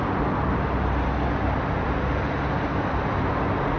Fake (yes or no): no